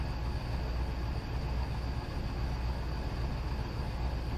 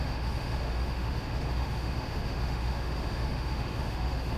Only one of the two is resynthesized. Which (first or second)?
second